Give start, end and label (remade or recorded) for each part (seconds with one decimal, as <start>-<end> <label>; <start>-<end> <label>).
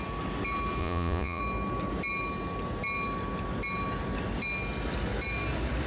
0.0-0.8 recorded; 0.8-1.4 remade; 1.4-5.9 recorded